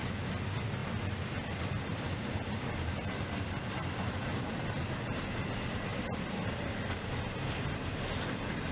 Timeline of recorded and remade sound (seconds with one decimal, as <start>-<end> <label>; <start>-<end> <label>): 0.0-0.8 recorded; 0.8-2.8 remade; 2.8-3.8 recorded; 3.8-4.8 remade; 4.8-5.9 recorded; 5.9-6.7 remade; 6.7-8.7 recorded